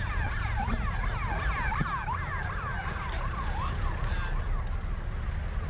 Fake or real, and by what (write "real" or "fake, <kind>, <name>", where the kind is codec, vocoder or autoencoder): real